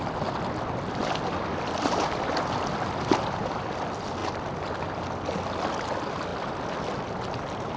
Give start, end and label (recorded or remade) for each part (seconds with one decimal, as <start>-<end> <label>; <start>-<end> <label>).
0.0-7.8 recorded